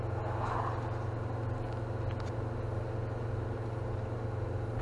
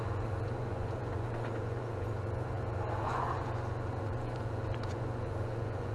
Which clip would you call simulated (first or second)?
second